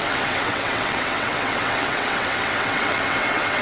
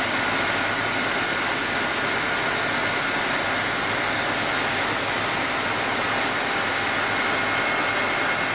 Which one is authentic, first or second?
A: second